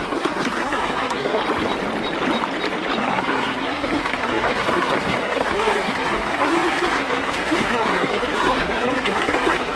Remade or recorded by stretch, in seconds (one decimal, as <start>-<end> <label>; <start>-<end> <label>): 0.0-1.4 remade; 1.4-3.0 recorded; 3.0-9.8 remade